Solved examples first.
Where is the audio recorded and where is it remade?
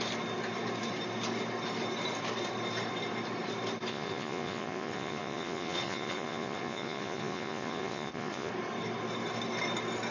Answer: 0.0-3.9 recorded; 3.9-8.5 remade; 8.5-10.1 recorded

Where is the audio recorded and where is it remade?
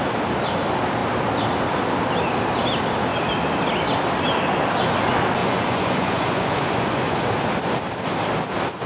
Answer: 0.0-5.4 recorded; 5.4-7.2 remade; 7.2-8.9 recorded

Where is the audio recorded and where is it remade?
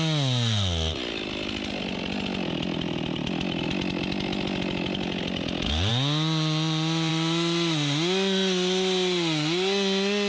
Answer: 0.0-10.3 recorded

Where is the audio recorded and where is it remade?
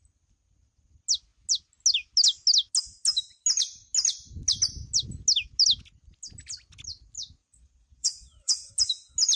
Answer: 0.0-7.4 recorded; 7.4-8.7 remade; 8.7-9.4 recorded